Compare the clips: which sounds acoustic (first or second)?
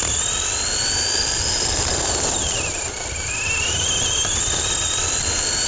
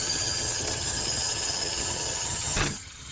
first